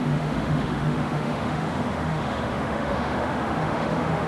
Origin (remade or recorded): remade